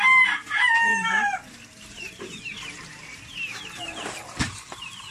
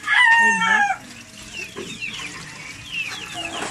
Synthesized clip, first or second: first